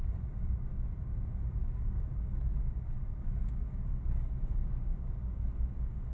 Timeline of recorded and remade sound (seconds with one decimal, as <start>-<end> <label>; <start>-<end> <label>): 0.0-0.4 recorded; 0.4-1.1 remade; 1.1-1.6 recorded; 1.6-5.3 remade; 5.3-6.1 recorded